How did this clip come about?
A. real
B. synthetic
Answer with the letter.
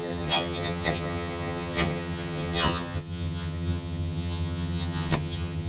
B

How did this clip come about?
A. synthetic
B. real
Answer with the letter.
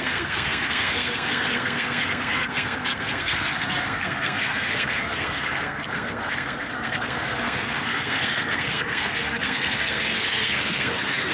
A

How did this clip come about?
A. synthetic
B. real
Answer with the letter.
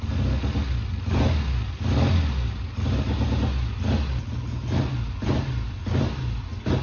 B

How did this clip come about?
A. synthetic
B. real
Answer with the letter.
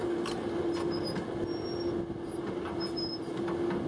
B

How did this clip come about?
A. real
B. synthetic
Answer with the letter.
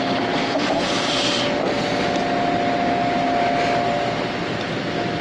A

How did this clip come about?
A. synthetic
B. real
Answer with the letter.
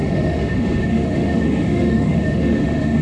A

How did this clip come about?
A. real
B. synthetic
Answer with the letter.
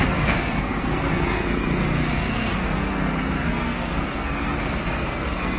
B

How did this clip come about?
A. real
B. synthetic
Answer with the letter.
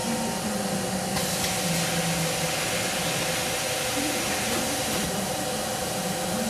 A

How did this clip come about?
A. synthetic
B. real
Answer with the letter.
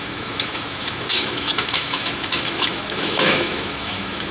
A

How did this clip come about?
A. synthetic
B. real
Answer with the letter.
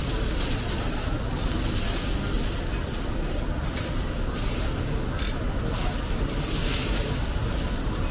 B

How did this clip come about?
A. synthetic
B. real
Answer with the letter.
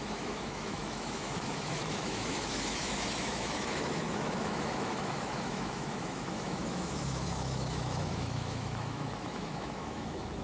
A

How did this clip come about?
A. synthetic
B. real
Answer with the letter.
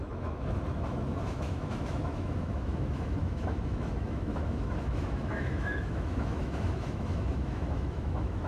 A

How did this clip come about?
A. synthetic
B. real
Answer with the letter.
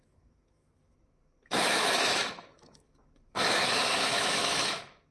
A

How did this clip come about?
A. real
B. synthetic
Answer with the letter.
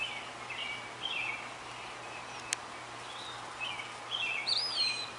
A